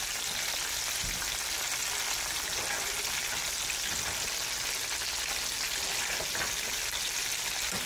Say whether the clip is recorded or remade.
recorded